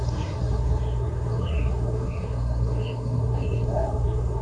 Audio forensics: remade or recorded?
remade